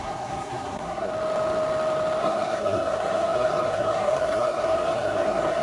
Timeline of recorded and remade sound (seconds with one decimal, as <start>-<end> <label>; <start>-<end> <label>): 0.0-1.1 remade; 1.1-2.2 recorded; 2.2-5.6 remade